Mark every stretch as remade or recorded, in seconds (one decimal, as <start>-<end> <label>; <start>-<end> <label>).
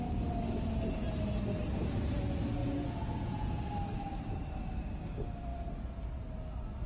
0.0-2.6 recorded; 2.6-3.7 remade; 3.7-6.9 recorded